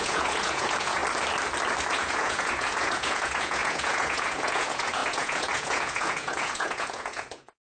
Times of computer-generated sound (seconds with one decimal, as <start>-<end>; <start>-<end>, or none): 0.0-1.0; 1.9-7.7